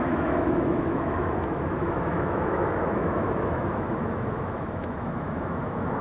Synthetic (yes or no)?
yes